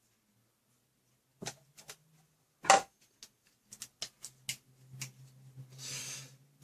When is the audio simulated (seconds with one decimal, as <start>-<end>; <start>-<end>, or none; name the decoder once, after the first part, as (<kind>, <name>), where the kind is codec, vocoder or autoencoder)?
none